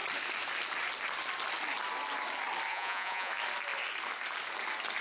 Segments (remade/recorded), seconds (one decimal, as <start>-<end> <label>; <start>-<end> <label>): 0.0-2.7 recorded; 2.7-3.3 remade; 3.3-5.0 recorded

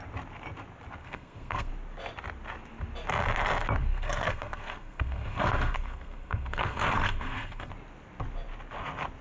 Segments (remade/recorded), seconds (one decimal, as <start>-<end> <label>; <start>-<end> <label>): 0.0-1.0 recorded; 1.0-1.7 remade; 1.7-3.8 recorded; 3.8-7.7 remade; 7.7-9.2 recorded

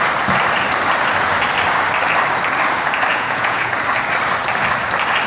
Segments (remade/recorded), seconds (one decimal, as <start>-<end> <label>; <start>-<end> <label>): 0.0-3.1 recorded; 3.1-3.7 remade; 3.7-5.3 recorded

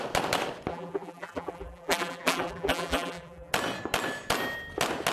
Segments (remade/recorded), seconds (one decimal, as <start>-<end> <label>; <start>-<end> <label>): 0.0-0.7 recorded; 0.7-3.5 remade; 3.5-5.1 recorded

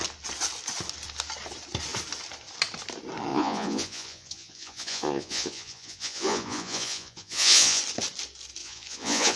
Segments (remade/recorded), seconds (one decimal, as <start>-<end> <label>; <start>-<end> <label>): 0.0-3.3 recorded; 3.3-7.8 remade; 7.8-8.6 recorded; 8.6-9.4 remade

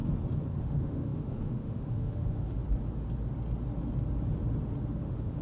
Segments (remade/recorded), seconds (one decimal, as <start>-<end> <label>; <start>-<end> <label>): 0.0-0.6 recorded; 0.6-2.6 remade; 2.6-4.9 recorded; 4.9-5.4 remade

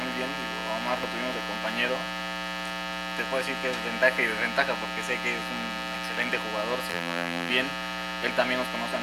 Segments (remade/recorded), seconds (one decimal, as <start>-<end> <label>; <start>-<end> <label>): 0.0-6.9 recorded; 6.9-7.5 remade; 7.5-9.0 recorded